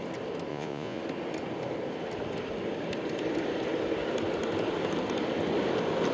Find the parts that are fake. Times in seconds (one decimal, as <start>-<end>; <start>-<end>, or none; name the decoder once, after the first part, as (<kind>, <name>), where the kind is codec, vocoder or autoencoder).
0.5-1.0 (vocoder, Vocos)